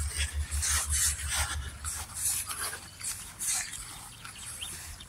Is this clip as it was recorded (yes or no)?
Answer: yes